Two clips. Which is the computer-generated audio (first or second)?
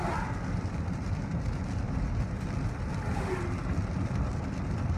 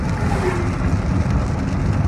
first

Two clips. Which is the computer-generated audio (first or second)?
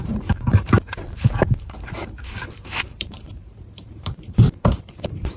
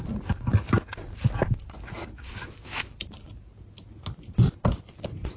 first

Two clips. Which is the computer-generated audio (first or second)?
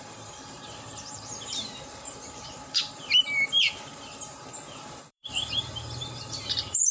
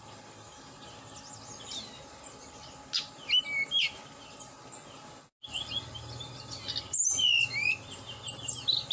first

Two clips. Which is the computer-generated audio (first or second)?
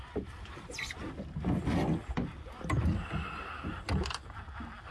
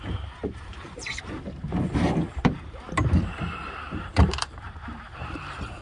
second